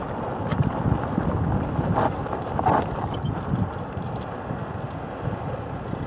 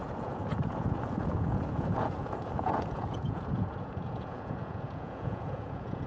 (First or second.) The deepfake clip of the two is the second